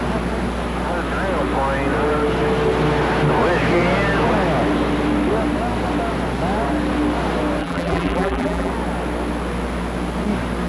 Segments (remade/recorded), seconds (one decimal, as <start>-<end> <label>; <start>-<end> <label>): 0.0-7.6 recorded; 7.6-8.7 remade; 8.7-10.7 recorded